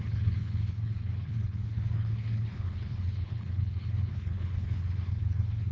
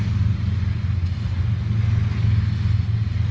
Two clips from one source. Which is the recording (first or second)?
second